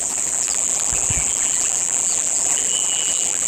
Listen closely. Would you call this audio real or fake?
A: fake